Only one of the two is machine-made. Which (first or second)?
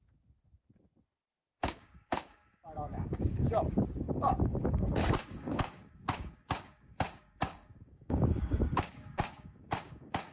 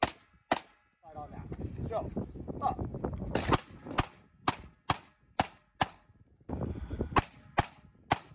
first